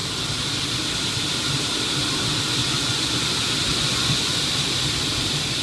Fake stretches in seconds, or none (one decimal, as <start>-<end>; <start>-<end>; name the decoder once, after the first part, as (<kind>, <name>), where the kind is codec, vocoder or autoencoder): 2.6-3.3 (vocoder, Vocos); 3.7-4.4